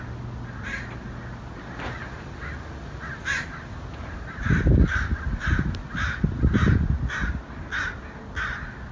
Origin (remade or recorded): recorded